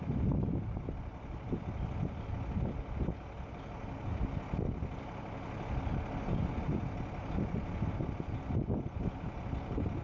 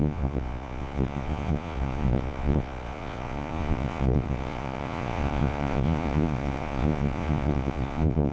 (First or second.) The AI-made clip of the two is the second